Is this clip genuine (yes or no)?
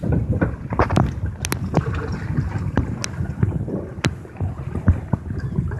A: yes